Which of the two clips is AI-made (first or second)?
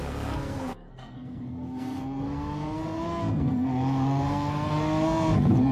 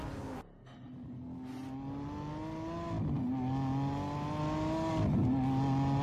first